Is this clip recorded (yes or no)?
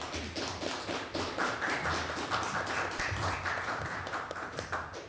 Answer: yes